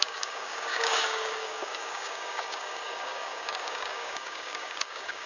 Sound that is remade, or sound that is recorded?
remade